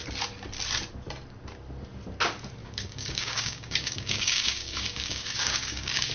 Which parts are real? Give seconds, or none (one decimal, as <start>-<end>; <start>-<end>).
0.0-2.6